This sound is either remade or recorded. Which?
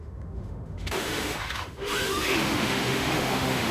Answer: remade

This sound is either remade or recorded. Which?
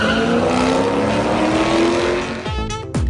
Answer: recorded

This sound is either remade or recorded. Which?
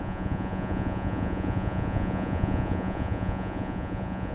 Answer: remade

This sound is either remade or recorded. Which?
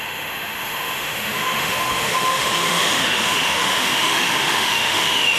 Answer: remade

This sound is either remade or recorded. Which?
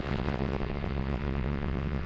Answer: remade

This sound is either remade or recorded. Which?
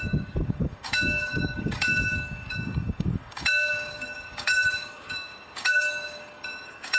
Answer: remade